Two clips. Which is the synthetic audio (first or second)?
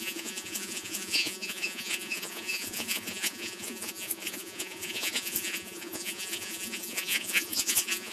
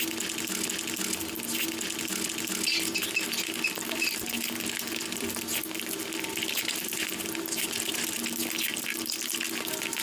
first